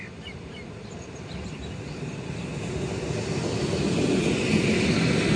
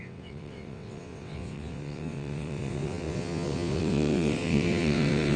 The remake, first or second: second